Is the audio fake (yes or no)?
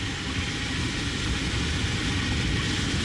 no